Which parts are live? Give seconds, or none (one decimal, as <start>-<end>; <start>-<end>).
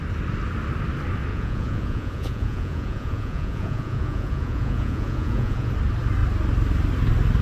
0.0-1.3; 5.7-7.4